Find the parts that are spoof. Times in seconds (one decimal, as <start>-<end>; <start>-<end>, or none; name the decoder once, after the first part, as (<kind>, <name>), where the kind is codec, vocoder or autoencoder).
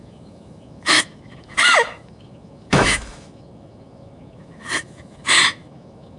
0.0-6.2 (autoencoder, DAC-VAE)